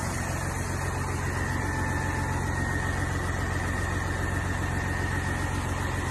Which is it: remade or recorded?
recorded